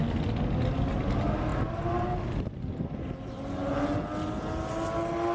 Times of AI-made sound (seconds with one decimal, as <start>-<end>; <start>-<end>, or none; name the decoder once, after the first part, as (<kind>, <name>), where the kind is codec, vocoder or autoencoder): none